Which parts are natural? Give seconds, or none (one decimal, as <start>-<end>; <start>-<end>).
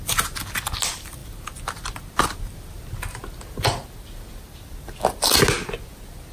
0.0-6.3